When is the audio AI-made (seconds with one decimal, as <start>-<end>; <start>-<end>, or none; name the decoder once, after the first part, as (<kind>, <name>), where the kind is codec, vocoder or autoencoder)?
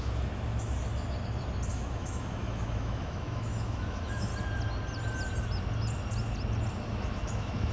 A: 0.0-0.9 (autoencoder, DAC-VAE); 1.7-4.3; 6.7-7.7